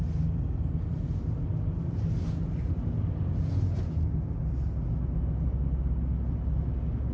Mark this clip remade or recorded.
recorded